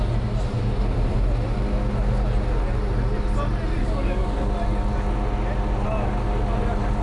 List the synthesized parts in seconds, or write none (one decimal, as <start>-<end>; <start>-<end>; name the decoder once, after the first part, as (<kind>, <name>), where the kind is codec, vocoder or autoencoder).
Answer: 3.8-4.5 (codec, DAC)